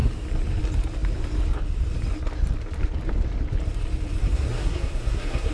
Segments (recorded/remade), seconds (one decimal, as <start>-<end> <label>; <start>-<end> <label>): 0.0-4.2 recorded; 4.2-5.5 remade